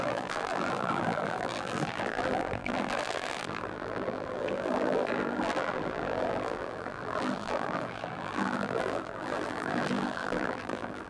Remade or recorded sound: remade